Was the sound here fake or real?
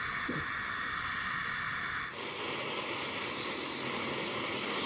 real